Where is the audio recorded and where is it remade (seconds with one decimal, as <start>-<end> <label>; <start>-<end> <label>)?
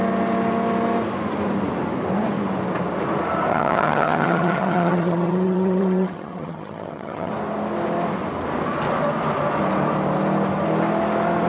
0.0-3.5 recorded; 3.5-7.3 remade; 7.3-11.5 recorded